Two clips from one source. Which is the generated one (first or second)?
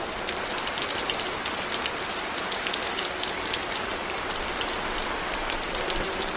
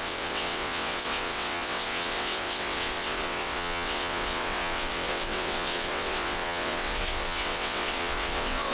second